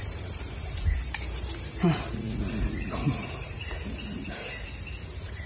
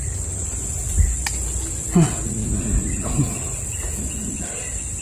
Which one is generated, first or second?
first